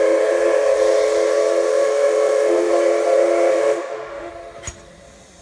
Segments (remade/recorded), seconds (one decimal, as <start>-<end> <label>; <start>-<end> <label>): 0.0-1.7 recorded; 1.7-2.7 remade; 2.7-3.5 recorded; 3.5-4.3 remade; 4.3-5.4 recorded